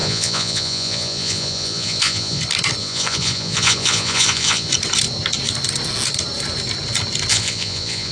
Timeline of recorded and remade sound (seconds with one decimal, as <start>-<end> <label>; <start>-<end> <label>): 0.0-2.4 remade; 2.4-2.8 recorded; 2.8-4.7 remade; 4.7-7.3 recorded; 7.3-8.1 remade